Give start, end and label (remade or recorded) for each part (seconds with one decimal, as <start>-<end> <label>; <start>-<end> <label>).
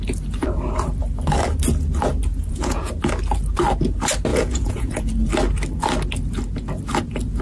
0.0-2.3 recorded; 2.3-2.9 remade; 2.9-4.3 recorded; 4.3-5.0 remade; 5.0-7.4 recorded